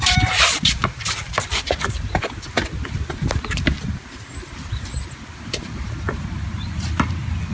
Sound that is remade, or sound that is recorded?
remade